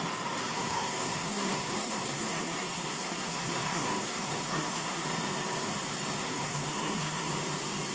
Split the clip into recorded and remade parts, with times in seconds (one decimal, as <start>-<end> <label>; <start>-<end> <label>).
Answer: 0.0-0.4 recorded; 0.4-5.1 remade; 5.1-6.2 recorded; 6.2-7.3 remade; 7.3-7.9 recorded